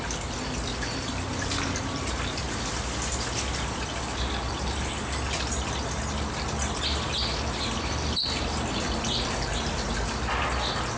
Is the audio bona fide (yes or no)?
yes